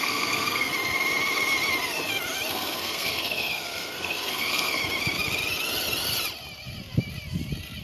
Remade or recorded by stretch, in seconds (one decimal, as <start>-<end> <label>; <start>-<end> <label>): 0.0-0.7 remade; 0.7-2.5 recorded; 2.5-4.8 remade; 4.8-7.8 recorded